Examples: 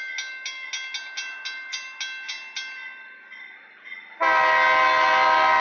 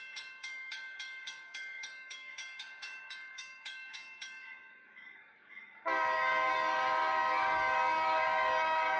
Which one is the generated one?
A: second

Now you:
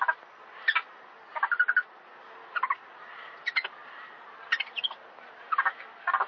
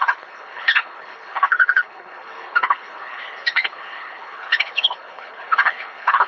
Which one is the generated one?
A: second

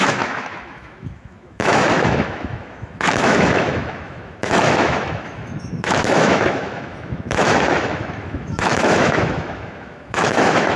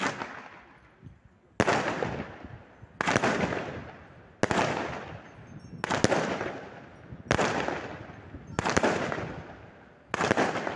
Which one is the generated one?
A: first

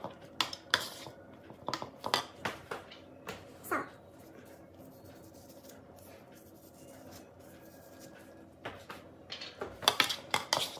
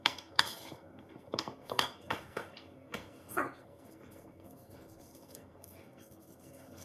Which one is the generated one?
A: second